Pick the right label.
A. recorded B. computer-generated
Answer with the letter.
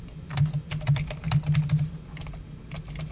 A